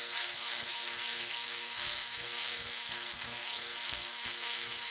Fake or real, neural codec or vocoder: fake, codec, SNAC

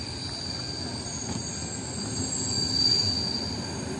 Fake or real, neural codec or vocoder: real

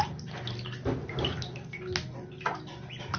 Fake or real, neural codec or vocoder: real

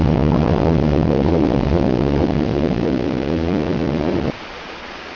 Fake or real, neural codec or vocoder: fake, vocoder, Vocos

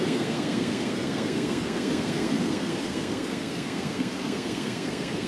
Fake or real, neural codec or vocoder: fake, codec, SNAC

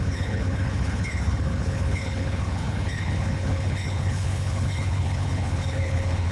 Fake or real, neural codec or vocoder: fake, codec, HILCodec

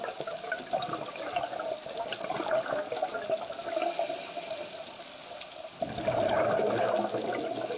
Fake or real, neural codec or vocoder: real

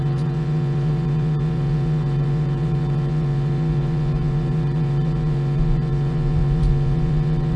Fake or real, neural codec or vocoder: fake, vocoder, Vocos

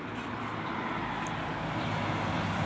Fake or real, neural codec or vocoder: real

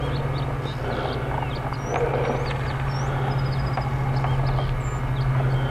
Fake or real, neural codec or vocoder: real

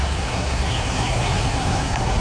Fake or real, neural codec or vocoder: fake, codec, SNAC